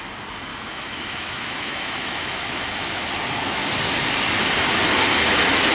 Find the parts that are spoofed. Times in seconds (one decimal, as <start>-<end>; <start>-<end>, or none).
0.5-3.1